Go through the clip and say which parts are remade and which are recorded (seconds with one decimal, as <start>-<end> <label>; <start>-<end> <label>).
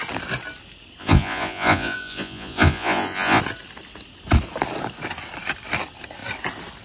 0.0-1.0 recorded; 1.0-3.4 remade; 3.4-6.8 recorded